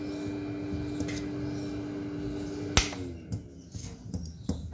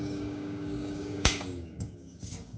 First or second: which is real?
first